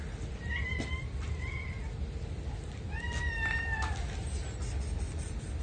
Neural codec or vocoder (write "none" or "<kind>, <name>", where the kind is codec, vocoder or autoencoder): none